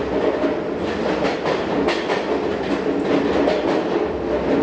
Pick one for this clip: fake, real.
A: real